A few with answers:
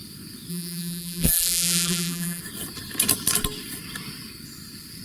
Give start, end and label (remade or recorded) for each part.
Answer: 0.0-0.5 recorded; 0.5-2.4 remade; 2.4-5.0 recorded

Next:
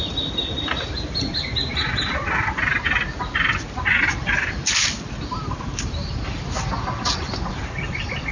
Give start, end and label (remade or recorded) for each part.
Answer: 0.0-1.5 remade; 1.5-4.0 recorded; 4.0-6.0 remade; 6.0-7.5 recorded; 7.5-8.3 remade